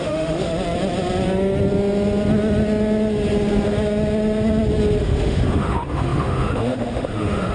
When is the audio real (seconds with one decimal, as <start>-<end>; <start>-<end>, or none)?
0.5-5.0